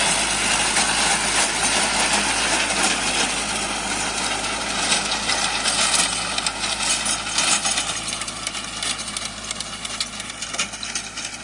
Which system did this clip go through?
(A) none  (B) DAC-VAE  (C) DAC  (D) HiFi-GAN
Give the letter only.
A